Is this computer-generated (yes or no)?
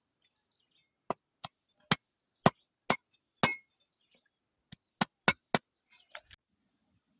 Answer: no